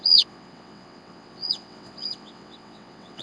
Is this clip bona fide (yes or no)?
no